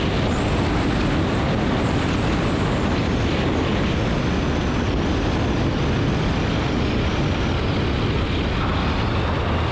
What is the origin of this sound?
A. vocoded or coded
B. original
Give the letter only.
B